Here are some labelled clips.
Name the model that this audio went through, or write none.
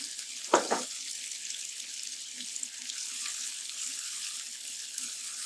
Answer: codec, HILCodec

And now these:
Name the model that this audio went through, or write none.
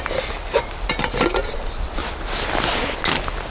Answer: none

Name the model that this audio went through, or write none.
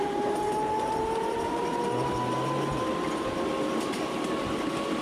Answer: none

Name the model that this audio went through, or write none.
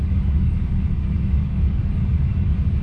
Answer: codec, DAC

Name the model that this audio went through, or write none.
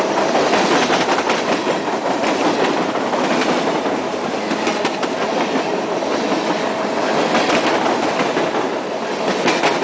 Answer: none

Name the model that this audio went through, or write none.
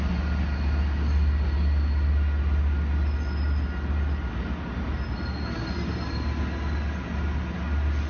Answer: none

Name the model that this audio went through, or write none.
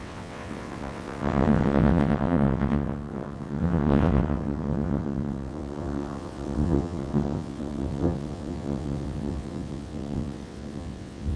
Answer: vocoder, WaveNeXt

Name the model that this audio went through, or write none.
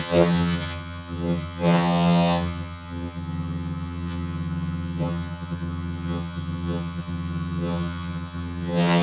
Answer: vocoder, HiFi-GAN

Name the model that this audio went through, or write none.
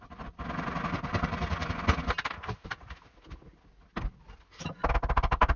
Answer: none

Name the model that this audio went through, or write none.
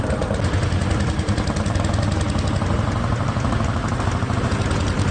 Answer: none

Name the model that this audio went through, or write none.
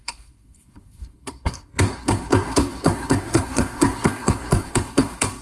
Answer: codec, SNAC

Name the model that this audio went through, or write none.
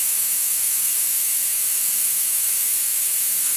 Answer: autoencoder, DAC-VAE